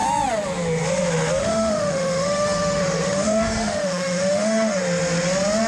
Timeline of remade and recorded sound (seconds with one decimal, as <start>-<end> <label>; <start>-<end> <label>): 0.0-1.4 recorded; 1.4-4.8 remade; 4.8-5.7 recorded